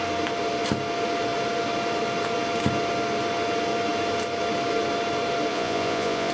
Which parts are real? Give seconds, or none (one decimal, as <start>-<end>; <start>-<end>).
0.0-5.5